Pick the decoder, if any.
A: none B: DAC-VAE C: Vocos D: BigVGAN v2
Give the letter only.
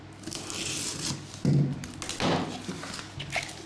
A